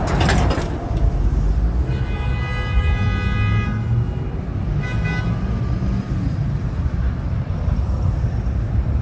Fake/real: real